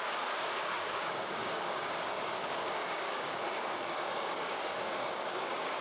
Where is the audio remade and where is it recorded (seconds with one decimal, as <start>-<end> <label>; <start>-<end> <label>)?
0.0-5.8 remade